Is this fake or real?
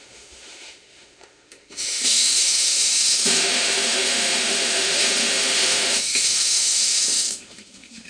fake